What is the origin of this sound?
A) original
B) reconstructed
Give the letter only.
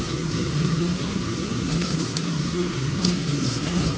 B